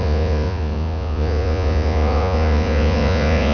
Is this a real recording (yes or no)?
no